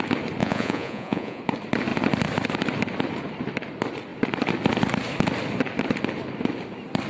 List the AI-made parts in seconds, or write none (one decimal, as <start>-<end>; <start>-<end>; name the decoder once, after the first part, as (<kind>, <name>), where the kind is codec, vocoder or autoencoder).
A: 0.4-1.4 (vocoder, Vocos)